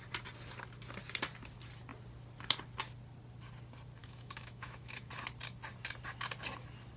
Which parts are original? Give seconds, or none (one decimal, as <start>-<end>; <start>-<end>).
0.0-4.0; 5.1-7.0